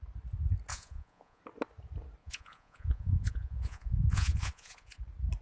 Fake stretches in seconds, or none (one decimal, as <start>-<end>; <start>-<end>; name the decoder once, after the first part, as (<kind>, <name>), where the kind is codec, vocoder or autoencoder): 0.7-1.4 (vocoder, Vocos); 2.2-5.0